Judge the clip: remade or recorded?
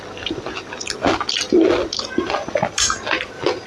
recorded